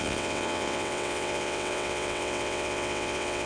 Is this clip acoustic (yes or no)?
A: no